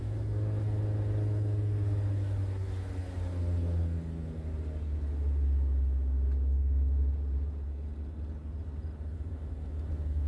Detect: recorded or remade recorded